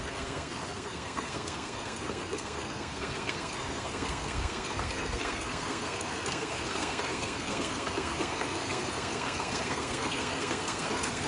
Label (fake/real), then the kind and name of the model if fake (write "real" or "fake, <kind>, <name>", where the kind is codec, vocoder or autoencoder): fake, codec, SNAC